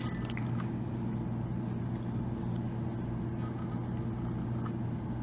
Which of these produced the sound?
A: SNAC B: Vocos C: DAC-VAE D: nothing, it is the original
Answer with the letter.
D